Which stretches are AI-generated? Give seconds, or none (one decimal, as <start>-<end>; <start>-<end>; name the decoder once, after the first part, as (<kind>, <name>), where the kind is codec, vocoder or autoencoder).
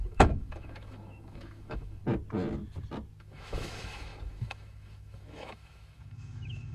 0.0-2.0 (autoencoder, DAC-VAE); 3.2-6.7